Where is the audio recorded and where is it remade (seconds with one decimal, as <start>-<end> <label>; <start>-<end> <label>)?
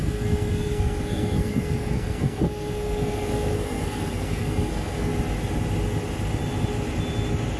0.0-5.1 remade; 5.1-7.6 recorded